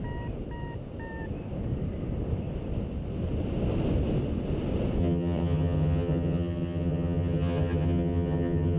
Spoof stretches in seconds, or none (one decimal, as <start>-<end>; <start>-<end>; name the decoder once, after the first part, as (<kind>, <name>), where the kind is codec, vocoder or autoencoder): 5.0-8.8 (vocoder, HiFi-GAN)